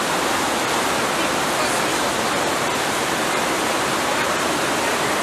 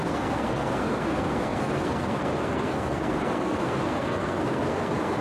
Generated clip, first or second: second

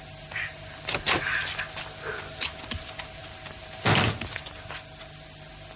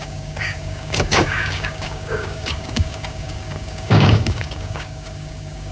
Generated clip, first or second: second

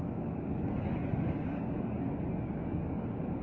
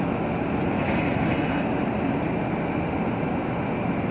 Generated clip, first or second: first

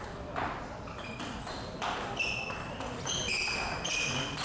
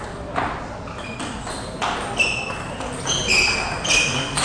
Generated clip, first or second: first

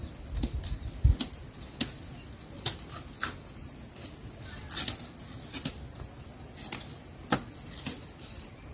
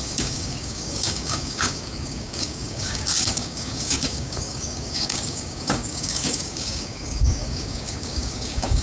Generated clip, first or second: second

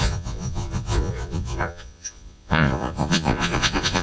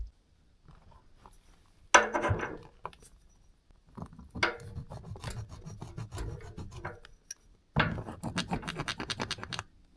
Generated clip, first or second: first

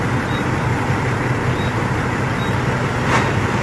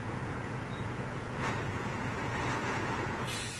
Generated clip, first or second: second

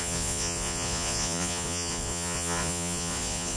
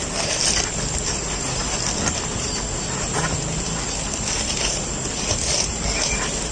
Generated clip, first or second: first